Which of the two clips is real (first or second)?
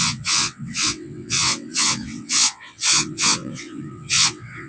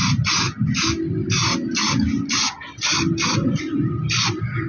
second